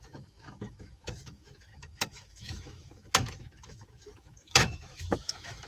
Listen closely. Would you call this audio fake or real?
fake